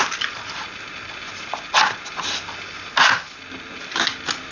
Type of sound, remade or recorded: recorded